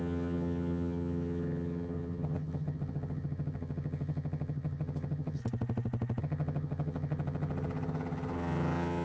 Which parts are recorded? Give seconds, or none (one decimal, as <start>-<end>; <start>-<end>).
5.4-6.2